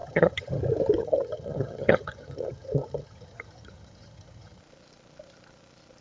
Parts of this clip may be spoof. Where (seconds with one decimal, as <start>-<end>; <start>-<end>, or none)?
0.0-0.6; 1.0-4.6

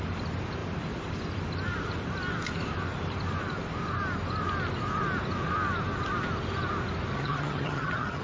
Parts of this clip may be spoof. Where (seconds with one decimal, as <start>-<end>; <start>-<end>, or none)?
7.1-8.2

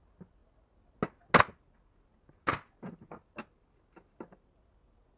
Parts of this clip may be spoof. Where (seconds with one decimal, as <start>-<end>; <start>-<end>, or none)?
none

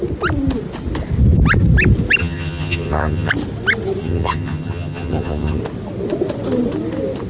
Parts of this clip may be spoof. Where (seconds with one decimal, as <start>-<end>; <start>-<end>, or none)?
2.2-3.3; 4.0-5.6

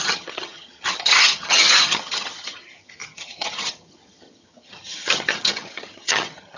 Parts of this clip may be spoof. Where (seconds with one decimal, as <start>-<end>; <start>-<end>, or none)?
0.0-6.6

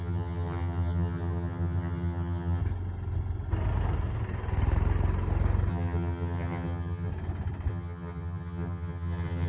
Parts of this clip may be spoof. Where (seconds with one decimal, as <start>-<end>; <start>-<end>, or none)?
0.0-2.6; 5.7-7.1; 7.7-9.5

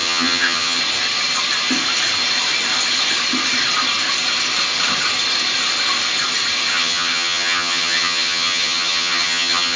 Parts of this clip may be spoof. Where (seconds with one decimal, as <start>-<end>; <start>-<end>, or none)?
0.0-0.8; 6.7-9.8